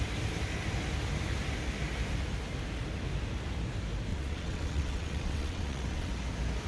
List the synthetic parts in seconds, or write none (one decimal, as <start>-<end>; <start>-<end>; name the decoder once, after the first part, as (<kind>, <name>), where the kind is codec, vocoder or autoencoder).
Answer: 4.1-6.1 (vocoder, WaveNeXt)